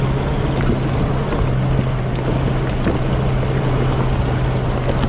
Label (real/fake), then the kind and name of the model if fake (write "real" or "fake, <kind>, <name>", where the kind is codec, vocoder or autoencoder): real